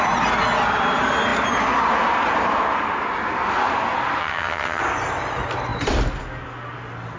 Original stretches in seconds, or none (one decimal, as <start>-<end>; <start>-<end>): 0.0-4.2; 4.8-7.2